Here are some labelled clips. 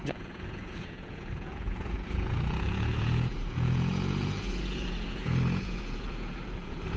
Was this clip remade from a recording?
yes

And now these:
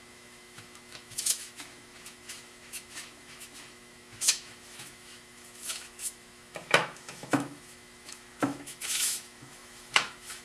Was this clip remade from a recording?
yes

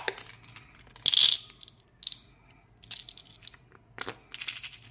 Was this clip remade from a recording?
no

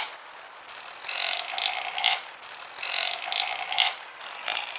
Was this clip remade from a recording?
no